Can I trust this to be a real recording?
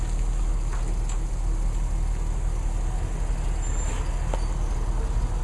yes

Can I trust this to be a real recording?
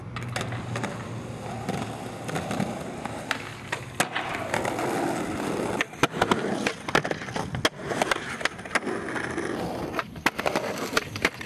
yes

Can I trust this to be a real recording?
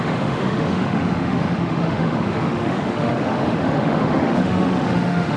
no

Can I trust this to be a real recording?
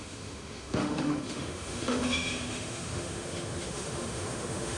no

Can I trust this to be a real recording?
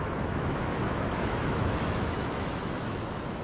no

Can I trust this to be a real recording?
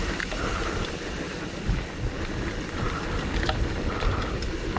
yes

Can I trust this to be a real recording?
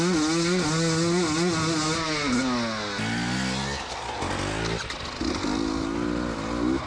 yes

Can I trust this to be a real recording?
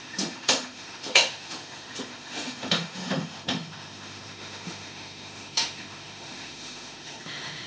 no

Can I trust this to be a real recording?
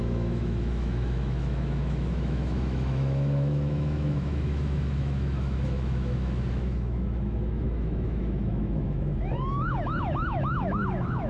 no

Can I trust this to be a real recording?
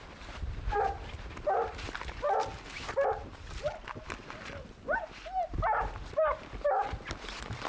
yes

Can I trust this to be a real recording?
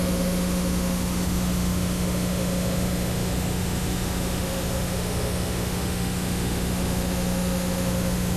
no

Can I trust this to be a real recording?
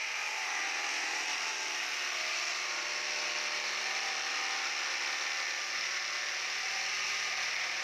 yes